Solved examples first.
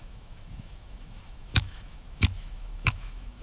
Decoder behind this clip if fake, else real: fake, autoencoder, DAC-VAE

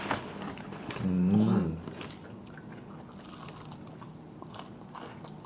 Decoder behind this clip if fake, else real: real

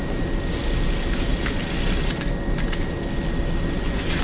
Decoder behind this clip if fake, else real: real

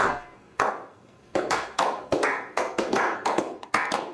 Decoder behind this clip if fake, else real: fake, codec, SNAC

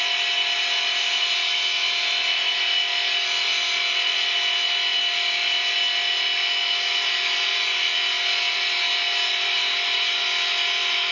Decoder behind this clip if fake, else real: real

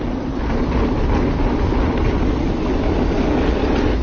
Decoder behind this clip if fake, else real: real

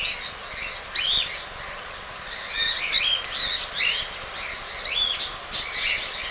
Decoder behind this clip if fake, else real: real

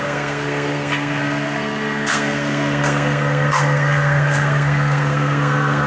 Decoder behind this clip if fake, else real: fake, codec, SNAC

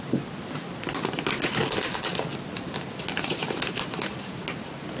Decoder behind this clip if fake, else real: real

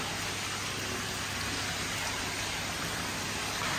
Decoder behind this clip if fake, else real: real